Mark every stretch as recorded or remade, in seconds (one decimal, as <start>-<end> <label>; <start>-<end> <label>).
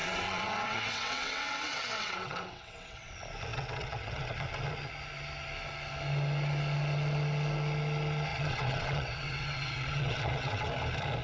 0.0-3.1 remade; 3.1-3.5 recorded; 3.5-4.3 remade; 4.3-8.3 recorded; 8.3-10.7 remade; 10.7-11.2 recorded